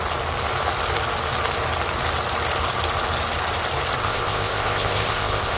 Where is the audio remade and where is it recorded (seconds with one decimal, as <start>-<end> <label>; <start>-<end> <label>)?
0.0-4.0 recorded; 4.0-5.6 remade